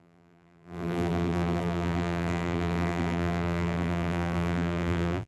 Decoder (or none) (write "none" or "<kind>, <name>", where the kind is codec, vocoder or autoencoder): vocoder, BigVGAN v2